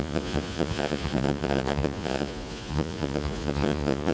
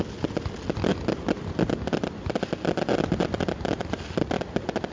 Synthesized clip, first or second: first